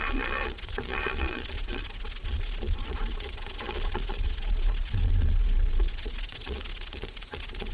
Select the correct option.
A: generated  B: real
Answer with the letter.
A